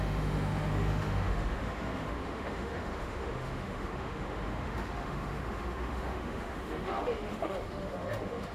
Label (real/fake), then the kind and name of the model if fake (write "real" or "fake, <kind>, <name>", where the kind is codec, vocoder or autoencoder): fake, autoencoder, DAC-VAE